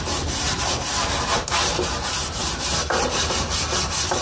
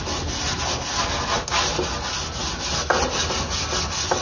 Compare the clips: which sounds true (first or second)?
second